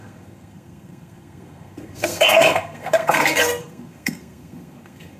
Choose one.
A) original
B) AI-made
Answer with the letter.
B